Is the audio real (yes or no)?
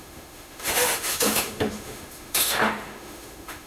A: no